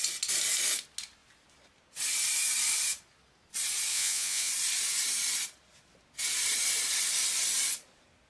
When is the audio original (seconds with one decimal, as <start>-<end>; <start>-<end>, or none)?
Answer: 0.0-3.9; 4.5-8.3